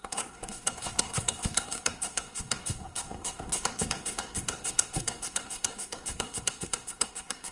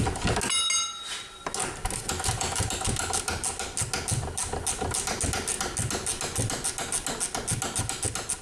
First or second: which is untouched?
second